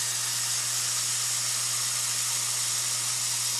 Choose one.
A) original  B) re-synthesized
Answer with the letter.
A